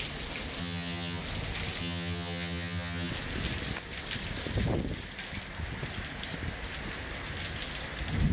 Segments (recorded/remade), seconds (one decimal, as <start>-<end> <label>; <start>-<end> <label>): 0.0-0.6 recorded; 0.6-1.2 remade; 1.2-1.8 recorded; 1.8-3.1 remade; 3.1-8.3 recorded